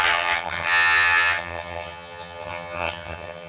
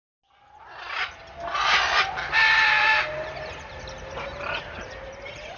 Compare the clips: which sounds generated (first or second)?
first